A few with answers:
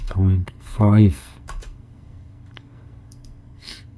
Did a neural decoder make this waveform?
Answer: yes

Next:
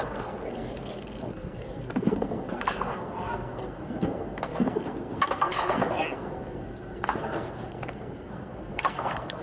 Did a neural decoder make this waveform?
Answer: yes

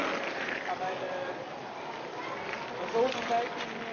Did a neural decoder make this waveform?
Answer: no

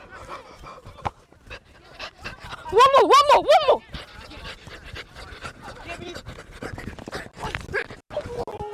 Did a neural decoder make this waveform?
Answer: no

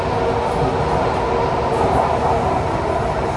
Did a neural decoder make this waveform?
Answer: no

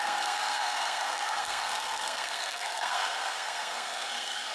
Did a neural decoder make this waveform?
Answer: yes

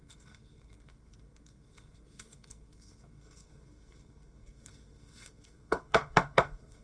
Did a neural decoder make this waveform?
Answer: yes